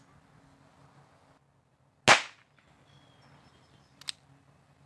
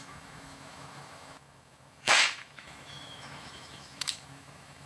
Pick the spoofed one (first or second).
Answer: second